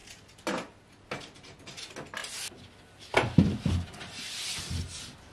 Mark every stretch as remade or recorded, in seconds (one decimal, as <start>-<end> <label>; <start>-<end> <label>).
0.0-5.3 recorded

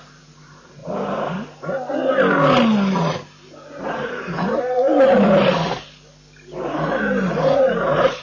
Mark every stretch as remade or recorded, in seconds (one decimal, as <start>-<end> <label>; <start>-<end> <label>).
0.0-0.8 remade; 0.8-3.8 recorded; 3.8-4.9 remade; 4.9-6.8 recorded; 6.8-8.2 remade

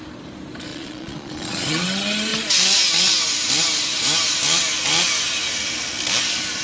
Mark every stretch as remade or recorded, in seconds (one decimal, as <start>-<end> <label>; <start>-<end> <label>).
0.0-0.7 recorded; 0.7-1.8 remade; 1.8-6.6 recorded

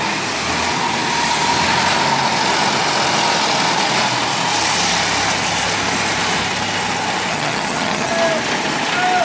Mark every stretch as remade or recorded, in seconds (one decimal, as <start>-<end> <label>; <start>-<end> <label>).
0.0-7.3 recorded; 7.3-8.1 remade; 8.1-9.2 recorded

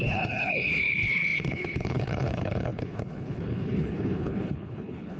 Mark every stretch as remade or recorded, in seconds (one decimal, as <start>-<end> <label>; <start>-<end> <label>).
0.0-5.2 remade